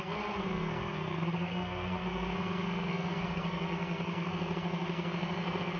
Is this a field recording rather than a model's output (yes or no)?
no